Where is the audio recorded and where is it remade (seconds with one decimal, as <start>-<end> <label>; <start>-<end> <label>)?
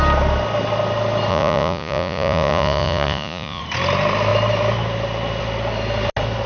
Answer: 0.0-1.3 recorded; 1.3-3.6 remade; 3.6-6.5 recorded